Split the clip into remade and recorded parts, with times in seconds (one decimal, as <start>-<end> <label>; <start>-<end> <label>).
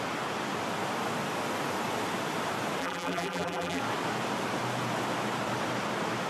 0.0-2.8 recorded; 2.8-3.8 remade; 3.8-6.3 recorded